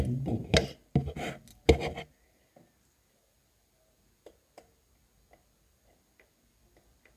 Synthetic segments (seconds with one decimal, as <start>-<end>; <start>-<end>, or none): none